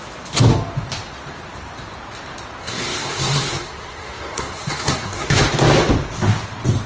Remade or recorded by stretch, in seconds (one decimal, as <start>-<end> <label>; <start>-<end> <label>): 0.0-2.6 recorded; 2.6-5.4 remade; 5.4-6.9 recorded